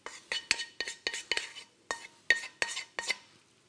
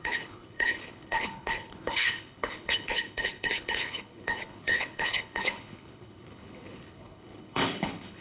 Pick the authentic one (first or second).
first